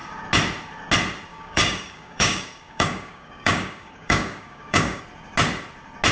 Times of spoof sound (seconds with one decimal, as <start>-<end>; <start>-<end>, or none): 1.3-5.0